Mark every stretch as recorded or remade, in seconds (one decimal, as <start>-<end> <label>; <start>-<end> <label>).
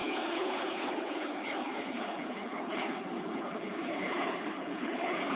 0.0-5.4 remade